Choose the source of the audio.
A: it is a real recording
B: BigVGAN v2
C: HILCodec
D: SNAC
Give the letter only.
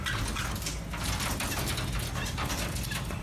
A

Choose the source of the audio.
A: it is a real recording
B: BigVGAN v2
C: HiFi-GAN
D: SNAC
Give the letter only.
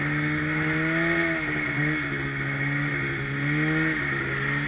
A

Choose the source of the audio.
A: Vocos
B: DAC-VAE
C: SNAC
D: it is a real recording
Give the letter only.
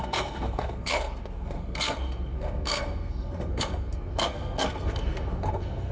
C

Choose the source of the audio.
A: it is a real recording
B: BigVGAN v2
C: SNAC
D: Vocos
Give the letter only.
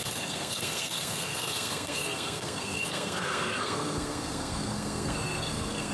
C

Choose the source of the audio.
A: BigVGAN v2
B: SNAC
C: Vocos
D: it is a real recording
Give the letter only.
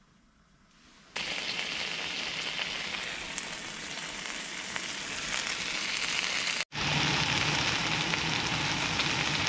D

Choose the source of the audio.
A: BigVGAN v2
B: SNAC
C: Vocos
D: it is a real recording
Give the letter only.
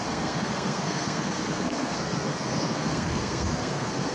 B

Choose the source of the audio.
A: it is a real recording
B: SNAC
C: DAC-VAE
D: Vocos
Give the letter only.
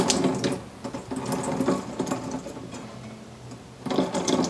A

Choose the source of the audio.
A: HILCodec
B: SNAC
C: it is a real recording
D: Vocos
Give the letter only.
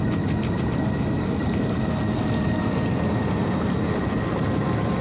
C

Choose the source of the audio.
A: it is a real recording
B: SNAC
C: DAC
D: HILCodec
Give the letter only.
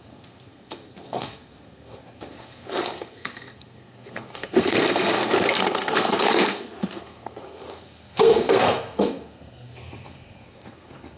B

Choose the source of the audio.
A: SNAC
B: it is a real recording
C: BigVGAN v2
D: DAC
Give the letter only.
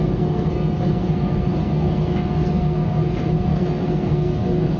A